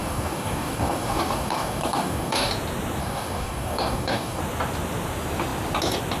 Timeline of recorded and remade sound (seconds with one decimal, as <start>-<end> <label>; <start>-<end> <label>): 0.0-2.5 remade; 2.5-3.0 recorded; 3.0-4.4 remade; 4.4-6.2 recorded